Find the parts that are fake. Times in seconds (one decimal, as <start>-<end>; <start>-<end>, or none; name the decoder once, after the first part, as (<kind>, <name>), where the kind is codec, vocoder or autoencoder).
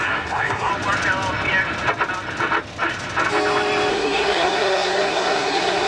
0.0-0.7 (codec, SNAC); 3.9-5.9